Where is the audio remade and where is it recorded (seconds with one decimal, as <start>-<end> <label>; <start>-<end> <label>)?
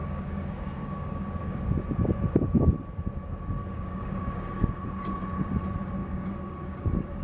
0.0-1.6 remade; 1.6-3.6 recorded; 3.6-4.7 remade; 4.7-6.0 recorded; 6.0-7.2 remade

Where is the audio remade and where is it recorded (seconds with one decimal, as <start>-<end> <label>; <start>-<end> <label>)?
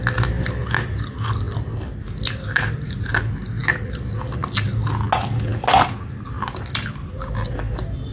0.0-8.1 recorded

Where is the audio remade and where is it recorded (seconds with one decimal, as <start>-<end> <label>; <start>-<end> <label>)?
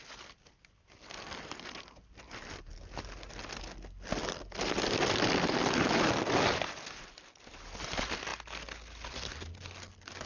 0.0-10.3 recorded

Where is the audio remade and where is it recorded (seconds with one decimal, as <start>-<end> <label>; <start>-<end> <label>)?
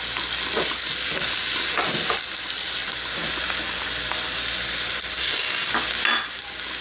0.0-5.2 recorded; 5.2-5.7 remade; 5.7-6.8 recorded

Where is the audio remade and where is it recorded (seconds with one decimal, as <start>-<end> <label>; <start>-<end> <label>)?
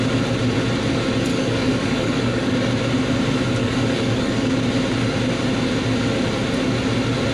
0.0-1.3 recorded; 1.3-2.7 remade; 2.7-3.6 recorded; 3.6-4.5 remade; 4.5-7.3 recorded